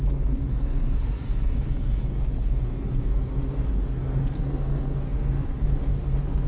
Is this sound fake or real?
fake